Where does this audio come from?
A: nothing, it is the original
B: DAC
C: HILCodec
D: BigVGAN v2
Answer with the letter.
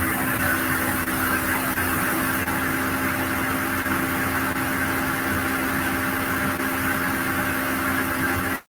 A